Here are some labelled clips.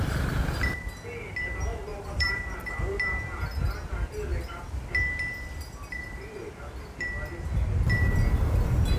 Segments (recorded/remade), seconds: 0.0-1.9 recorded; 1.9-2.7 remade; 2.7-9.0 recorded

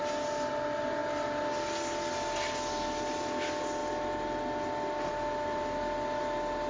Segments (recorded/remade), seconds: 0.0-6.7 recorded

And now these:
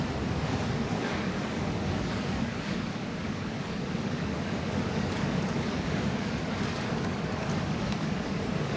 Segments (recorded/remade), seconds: 0.0-8.8 remade

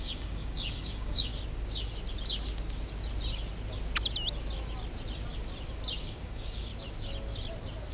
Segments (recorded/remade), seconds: 0.0-1.3 remade; 1.3-6.0 recorded; 6.0-6.7 remade; 6.7-7.9 recorded

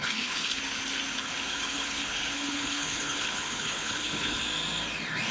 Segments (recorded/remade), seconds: 0.0-0.6 remade; 0.6-1.2 recorded; 1.2-4.4 remade; 4.4-5.3 recorded

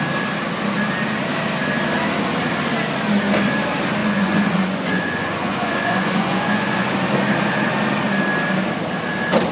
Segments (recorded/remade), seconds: 0.0-4.0 recorded; 4.0-6.9 remade; 6.9-9.5 recorded

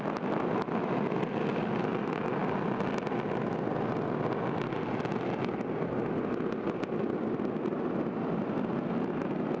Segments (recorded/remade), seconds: 0.0-9.6 recorded

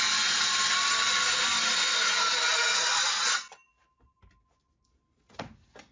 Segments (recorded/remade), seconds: 0.0-5.9 recorded